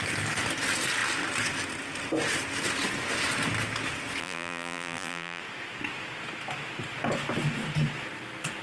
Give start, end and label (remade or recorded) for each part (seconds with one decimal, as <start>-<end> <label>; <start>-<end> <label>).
0.0-4.2 recorded; 4.2-5.4 remade; 5.4-8.6 recorded